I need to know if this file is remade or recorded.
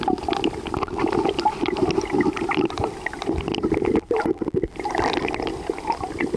recorded